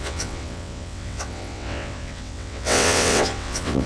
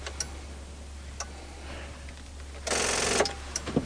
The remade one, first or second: first